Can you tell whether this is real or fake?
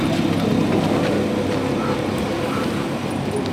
real